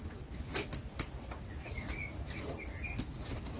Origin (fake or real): real